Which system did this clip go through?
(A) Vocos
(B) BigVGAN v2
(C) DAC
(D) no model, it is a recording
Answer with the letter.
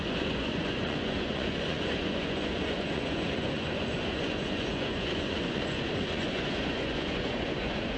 A